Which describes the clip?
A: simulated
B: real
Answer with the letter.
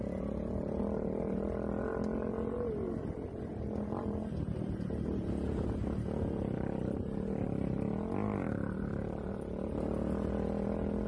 B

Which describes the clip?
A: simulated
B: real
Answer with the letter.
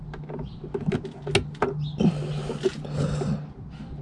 B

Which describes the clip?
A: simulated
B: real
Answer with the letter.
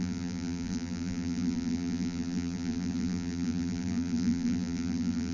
A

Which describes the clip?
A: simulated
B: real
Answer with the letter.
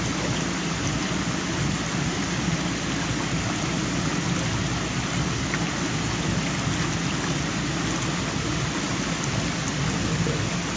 B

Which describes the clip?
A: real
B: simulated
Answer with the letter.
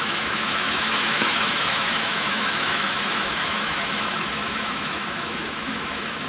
B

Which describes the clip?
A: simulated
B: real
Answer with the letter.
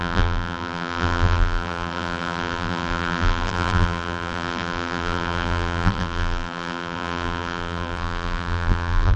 A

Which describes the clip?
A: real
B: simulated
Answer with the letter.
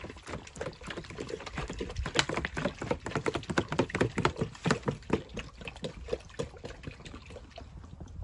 A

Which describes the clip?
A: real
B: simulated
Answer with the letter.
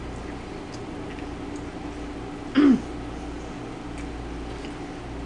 A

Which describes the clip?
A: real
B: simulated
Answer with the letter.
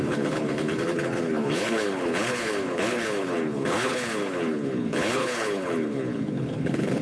B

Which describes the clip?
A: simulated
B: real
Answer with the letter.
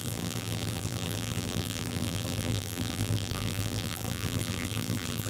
A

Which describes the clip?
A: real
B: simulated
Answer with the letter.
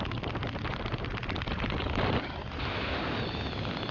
A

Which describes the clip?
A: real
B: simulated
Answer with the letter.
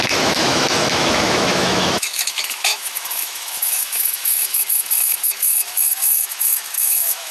B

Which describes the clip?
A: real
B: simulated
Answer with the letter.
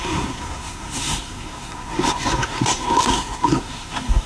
B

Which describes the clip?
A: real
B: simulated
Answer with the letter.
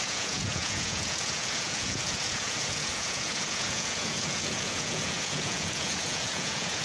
B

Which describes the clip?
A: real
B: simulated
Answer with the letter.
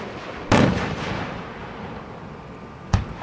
A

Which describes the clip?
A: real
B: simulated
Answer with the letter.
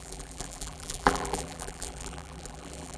B